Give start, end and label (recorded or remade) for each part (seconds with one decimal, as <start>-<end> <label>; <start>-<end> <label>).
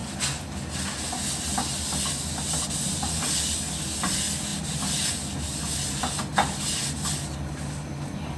0.0-8.4 recorded